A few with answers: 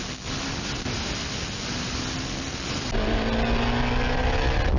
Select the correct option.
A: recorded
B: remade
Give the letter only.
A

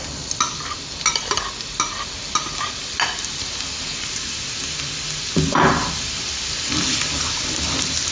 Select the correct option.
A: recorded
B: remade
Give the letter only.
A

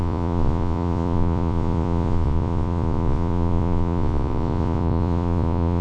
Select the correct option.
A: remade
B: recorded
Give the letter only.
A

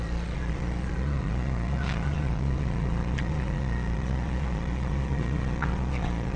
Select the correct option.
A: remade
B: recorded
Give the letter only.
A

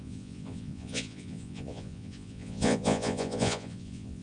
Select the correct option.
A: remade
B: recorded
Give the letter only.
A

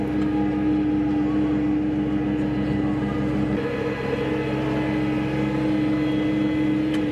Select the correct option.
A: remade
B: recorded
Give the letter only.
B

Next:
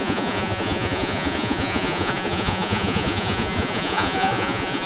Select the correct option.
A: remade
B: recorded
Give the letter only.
A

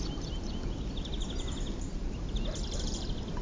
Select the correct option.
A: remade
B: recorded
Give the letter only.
B